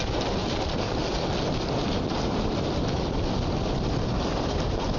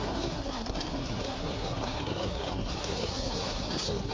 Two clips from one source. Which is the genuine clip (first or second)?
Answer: first